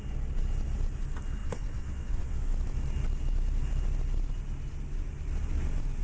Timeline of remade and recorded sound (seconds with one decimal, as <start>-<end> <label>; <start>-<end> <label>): 0.0-1.4 recorded; 1.4-2.5 remade; 2.5-6.0 recorded